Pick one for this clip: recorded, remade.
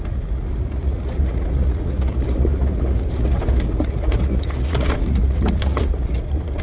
remade